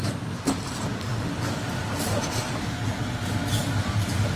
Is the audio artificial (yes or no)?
no